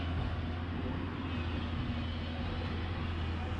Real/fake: real